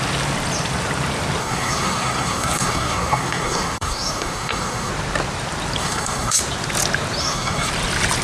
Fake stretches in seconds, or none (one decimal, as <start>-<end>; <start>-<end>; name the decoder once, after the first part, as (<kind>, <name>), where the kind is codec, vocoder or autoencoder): 1.4-4.9 (codec, SNAC); 5.8-6.4; 7.2-7.7